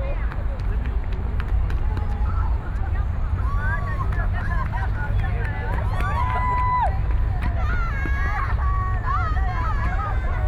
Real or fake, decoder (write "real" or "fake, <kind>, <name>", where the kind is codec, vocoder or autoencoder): real